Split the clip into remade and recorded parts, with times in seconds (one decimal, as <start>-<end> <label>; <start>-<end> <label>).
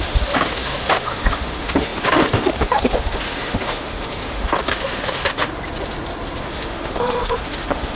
0.0-5.5 remade; 5.5-6.4 recorded; 6.4-8.0 remade